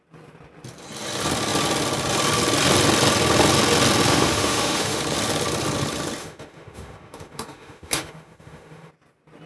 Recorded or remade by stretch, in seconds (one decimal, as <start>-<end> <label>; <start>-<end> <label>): 0.0-4.1 recorded; 4.1-5.0 remade; 5.0-6.2 recorded; 6.2-8.9 remade; 8.9-9.5 recorded